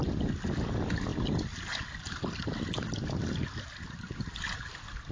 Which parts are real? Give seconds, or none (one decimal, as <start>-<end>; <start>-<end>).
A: 0.0-5.1